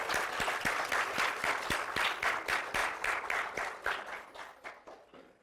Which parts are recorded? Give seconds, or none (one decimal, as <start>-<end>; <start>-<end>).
0.0-2.8; 4.7-5.4